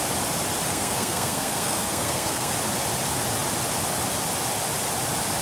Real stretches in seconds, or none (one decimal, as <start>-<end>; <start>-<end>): 0.0-0.7; 2.5-5.4